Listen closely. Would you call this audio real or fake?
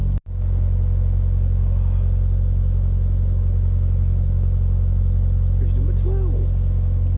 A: real